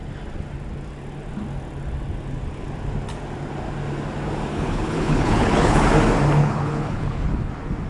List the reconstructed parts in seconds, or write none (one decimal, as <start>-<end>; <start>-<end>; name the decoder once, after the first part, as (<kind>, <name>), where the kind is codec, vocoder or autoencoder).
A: 4.5-5.8 (codec, HILCodec); 6.4-7.5